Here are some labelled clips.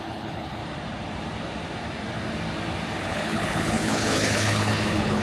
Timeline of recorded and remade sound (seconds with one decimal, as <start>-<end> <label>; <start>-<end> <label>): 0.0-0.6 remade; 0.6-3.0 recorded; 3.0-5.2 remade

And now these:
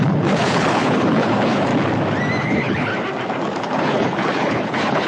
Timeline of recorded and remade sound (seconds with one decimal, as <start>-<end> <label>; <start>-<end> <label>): 0.0-1.7 remade; 1.7-2.4 recorded; 2.4-2.9 remade; 2.9-3.6 recorded; 3.6-5.1 remade

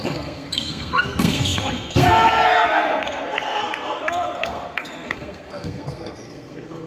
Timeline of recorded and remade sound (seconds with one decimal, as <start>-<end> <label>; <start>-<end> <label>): 0.0-6.9 remade

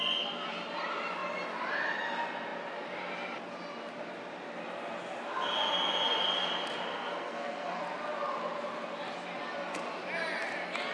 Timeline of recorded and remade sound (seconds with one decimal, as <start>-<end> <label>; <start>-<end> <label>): 0.0-6.9 recorded; 6.9-7.8 remade; 7.8-10.9 recorded